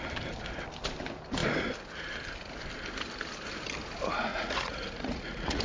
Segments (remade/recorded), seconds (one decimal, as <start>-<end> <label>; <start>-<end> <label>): 0.0-4.3 recorded; 4.3-5.6 remade